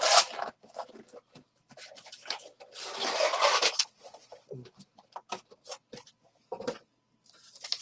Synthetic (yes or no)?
no